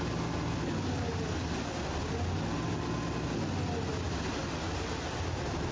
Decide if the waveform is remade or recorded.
recorded